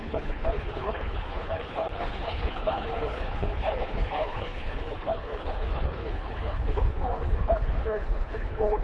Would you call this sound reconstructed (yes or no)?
yes